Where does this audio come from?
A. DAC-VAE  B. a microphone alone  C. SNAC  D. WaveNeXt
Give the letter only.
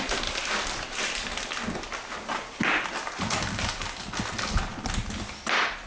B